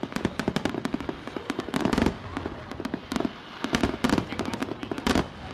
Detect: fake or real real